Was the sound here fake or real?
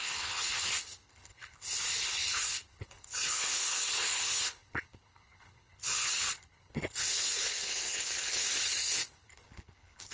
fake